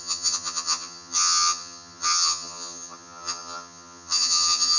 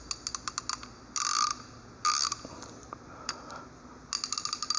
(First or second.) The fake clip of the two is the first